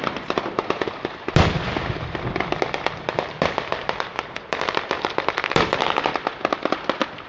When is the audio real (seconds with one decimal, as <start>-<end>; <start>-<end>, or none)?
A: none